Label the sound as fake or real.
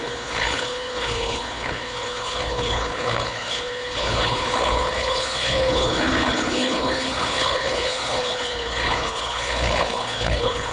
fake